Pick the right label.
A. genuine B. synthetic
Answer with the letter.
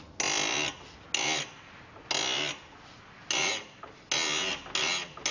A